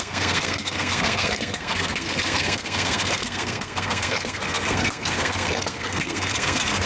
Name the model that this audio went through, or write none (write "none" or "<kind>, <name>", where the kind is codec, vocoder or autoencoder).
codec, SNAC